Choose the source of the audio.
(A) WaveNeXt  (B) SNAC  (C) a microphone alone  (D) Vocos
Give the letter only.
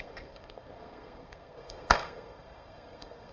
B